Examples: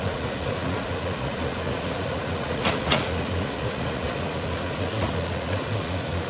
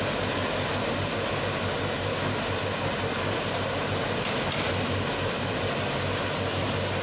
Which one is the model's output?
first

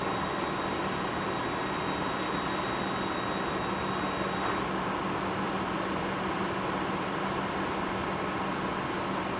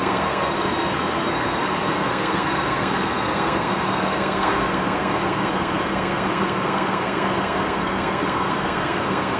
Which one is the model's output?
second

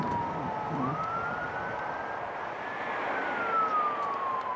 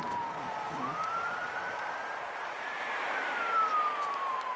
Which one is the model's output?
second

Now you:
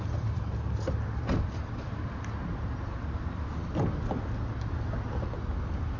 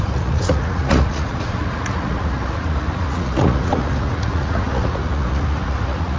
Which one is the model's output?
second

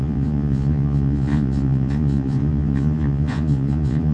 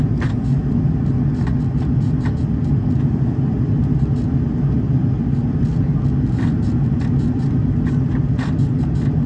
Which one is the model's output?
first